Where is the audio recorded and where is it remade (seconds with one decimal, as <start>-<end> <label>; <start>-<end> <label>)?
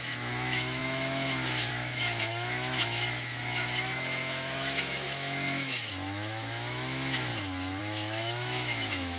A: 0.0-7.3 remade; 7.3-7.8 recorded; 7.8-9.2 remade